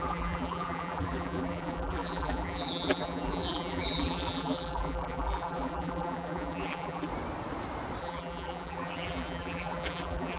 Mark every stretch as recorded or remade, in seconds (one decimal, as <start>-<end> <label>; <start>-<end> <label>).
0.0-7.1 remade; 7.1-8.0 recorded; 8.0-10.4 remade